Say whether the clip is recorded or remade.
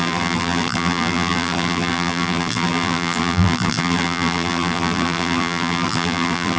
remade